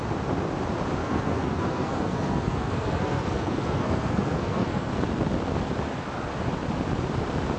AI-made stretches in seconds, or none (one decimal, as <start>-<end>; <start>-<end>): 1.0-4.9